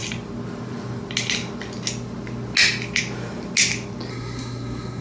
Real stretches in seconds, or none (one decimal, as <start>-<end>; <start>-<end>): 0.0-4.1